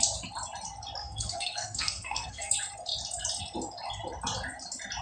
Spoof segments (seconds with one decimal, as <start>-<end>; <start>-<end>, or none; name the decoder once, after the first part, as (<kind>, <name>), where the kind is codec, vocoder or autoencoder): 1.0-2.5 (codec, SNAC)